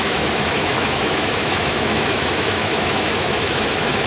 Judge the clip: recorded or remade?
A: remade